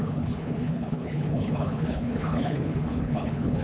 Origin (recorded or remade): remade